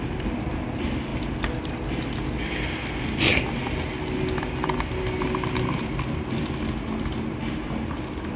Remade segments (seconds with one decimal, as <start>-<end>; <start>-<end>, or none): none